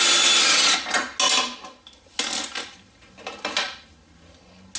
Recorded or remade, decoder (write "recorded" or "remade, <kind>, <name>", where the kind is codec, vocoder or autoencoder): recorded